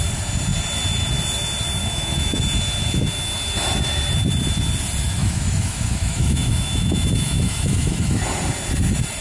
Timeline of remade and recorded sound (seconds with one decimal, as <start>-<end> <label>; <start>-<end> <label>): 0.0-1.8 recorded; 1.8-2.4 remade; 2.4-5.2 recorded; 5.2-8.2 remade; 8.2-9.2 recorded